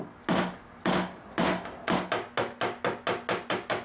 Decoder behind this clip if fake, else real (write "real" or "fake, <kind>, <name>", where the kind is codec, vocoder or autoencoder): real